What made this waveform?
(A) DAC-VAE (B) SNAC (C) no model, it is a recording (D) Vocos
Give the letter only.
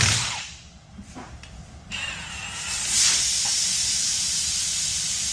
C